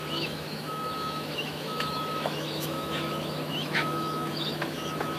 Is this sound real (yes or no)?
no